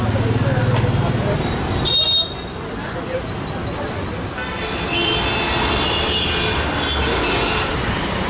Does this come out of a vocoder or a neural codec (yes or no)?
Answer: no